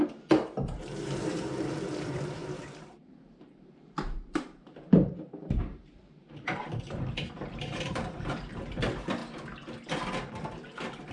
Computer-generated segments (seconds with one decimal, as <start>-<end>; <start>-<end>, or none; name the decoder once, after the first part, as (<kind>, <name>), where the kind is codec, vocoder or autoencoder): 0.0-9.2 (vocoder, BigVGAN v2); 10.3-11.1